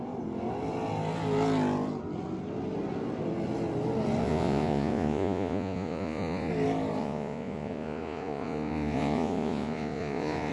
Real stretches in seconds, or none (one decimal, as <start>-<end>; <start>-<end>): 0.0-4.2; 6.5-7.0